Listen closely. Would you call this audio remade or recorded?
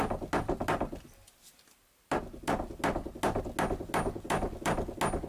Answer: recorded